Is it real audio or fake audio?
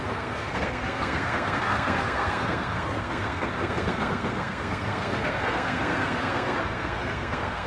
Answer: fake